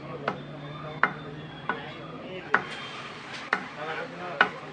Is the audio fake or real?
real